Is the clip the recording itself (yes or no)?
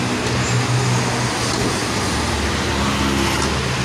yes